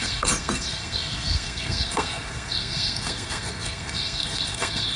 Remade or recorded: remade